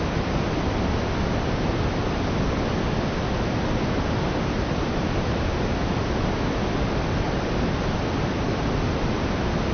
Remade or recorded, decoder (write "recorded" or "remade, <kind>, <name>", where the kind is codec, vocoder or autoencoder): recorded